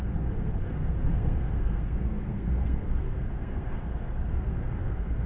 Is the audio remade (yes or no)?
yes